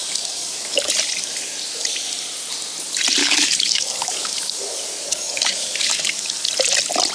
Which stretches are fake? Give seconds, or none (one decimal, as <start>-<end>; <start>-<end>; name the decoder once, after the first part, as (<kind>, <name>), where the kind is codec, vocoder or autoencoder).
0.0-0.9 (codec, DAC); 3.2-6.5